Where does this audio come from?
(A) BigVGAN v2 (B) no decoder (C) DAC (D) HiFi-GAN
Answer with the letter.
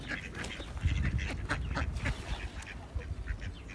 B